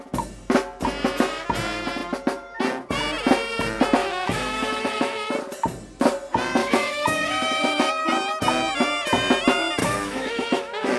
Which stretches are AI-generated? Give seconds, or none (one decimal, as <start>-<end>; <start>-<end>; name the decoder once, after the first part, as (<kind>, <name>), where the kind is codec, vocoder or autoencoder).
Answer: 4.0-5.3 (autoencoder, DAC-VAE); 6.6-7.9; 9.8-11.0